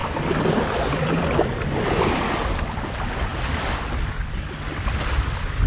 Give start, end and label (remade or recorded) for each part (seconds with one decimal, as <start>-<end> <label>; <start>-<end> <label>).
0.0-5.7 recorded